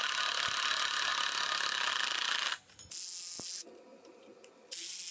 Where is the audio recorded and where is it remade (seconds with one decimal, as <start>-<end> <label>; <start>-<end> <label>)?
0.0-5.1 recorded